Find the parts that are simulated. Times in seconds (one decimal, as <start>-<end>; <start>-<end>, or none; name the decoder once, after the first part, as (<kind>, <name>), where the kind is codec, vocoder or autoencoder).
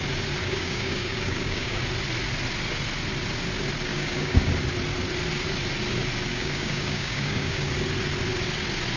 0.4-1.8 (codec, DAC); 3.9-4.5; 6.3-7.7